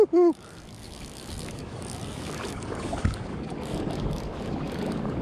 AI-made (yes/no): yes